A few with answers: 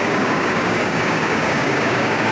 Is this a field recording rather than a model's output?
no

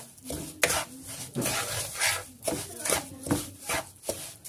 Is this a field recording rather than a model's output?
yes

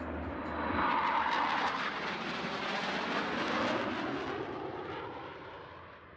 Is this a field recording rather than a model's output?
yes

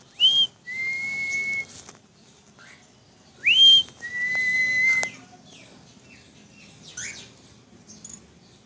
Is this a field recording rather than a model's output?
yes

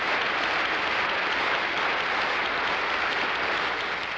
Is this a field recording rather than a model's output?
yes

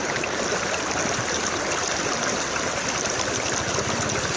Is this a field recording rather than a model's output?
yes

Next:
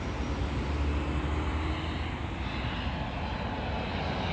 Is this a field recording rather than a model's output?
yes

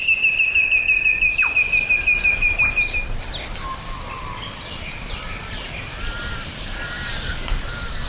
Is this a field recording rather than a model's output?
yes